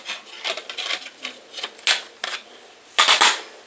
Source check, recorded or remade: recorded